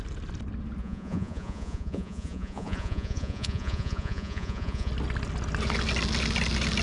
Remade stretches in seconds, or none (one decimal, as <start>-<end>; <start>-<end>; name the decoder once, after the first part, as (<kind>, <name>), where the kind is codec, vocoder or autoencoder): 0.8-4.9 (vocoder, Vocos)